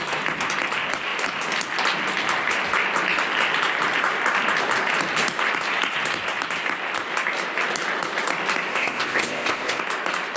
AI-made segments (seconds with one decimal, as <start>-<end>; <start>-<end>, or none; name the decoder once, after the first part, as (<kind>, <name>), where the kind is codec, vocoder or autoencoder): 8.7-9.8 (codec, ZipCodec)